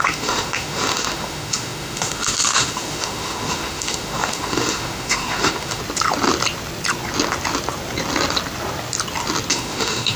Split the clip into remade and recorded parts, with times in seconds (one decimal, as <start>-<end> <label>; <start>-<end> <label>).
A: 0.0-5.8 remade; 5.8-9.5 recorded; 9.5-10.2 remade